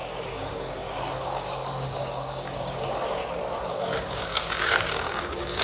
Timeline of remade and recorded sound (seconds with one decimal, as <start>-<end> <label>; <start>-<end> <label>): 0.0-3.2 remade; 3.2-3.7 recorded; 3.7-5.6 remade